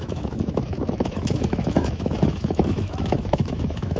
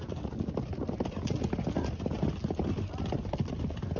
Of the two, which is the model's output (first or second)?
first